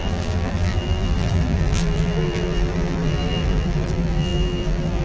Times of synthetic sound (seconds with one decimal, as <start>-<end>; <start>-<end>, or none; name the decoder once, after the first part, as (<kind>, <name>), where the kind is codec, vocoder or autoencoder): 0.0-5.0 (vocoder, BigVGAN v2)